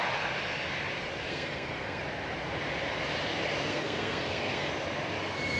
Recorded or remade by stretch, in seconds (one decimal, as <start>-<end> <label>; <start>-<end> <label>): 0.0-1.3 recorded; 1.3-2.0 remade; 2.0-3.7 recorded; 3.7-4.7 remade; 4.7-5.6 recorded